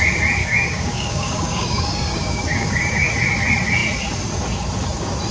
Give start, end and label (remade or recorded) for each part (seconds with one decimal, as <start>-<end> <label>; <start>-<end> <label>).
0.0-0.4 recorded; 0.4-3.1 remade; 3.1-5.3 recorded